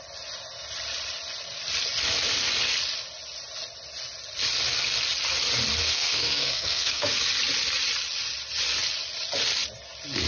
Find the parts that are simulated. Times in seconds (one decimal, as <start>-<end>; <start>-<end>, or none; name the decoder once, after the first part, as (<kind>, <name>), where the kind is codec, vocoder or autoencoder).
5.8-7.1 (codec, SNAC)